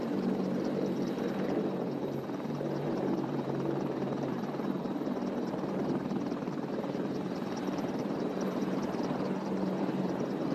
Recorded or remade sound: remade